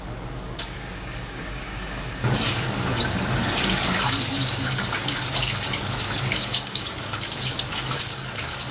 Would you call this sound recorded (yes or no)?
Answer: no